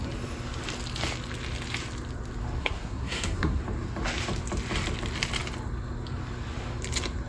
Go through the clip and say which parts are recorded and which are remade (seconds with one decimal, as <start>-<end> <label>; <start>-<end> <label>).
0.0-2.6 recorded; 2.6-3.6 remade; 3.6-7.3 recorded